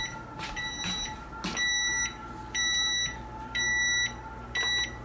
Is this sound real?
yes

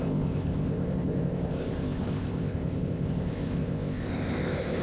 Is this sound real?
no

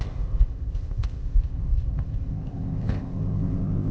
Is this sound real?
no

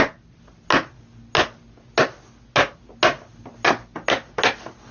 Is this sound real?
yes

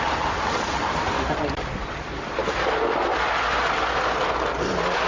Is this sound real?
yes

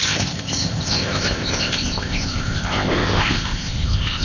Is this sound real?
no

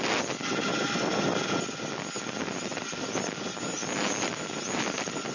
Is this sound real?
yes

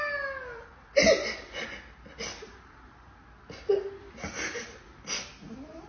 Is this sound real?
yes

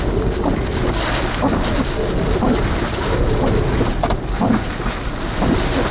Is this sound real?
yes